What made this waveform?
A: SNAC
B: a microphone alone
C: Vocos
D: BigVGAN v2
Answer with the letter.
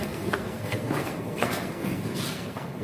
A